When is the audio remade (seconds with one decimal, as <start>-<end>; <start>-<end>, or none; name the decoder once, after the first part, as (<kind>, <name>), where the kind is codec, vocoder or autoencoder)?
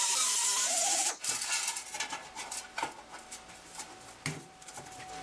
0.0-0.5 (vocoder, BigVGAN v2); 3.6-5.2